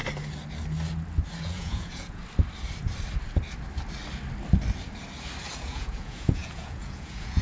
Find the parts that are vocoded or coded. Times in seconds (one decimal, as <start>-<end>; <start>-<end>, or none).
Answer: 1.4-2.2; 5.5-7.4